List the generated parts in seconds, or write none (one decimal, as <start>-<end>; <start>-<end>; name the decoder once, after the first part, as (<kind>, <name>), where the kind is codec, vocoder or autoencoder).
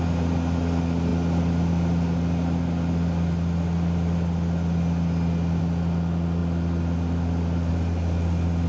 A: none